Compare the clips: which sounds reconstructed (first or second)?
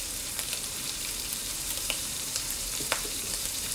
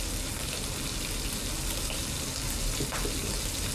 first